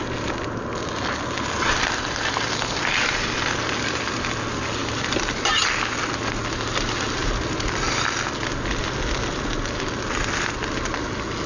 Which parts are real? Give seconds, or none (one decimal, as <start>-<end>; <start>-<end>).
0.0-11.5